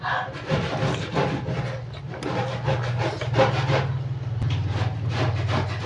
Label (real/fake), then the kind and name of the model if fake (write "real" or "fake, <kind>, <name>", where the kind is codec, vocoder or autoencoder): real